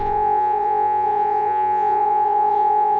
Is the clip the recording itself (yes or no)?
no